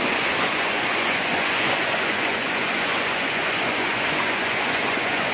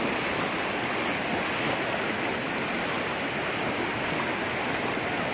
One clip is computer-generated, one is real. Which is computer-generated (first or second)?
first